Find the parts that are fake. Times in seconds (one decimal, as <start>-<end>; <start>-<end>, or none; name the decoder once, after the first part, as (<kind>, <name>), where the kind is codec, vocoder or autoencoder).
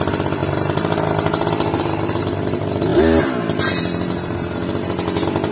0.4-2.2 (vocoder, BigVGAN v2)